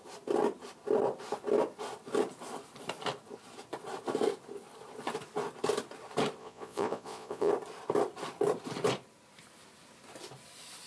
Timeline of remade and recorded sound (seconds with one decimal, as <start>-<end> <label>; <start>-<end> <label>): 0.0-6.4 recorded; 6.4-7.5 remade; 7.5-10.9 recorded